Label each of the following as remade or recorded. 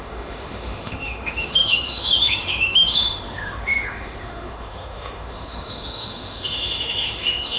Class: remade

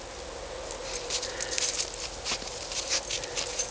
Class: recorded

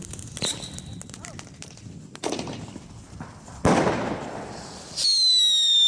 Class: recorded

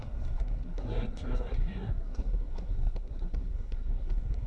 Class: remade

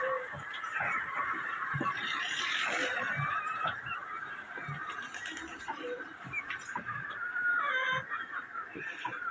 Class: remade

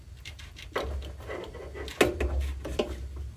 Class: recorded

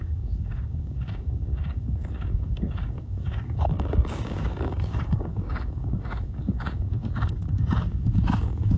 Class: remade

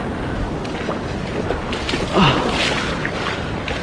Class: recorded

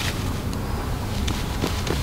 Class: recorded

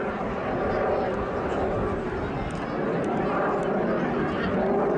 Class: recorded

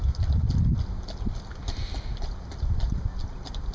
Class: recorded